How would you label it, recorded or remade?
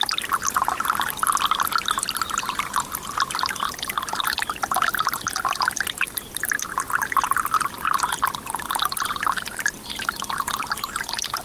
recorded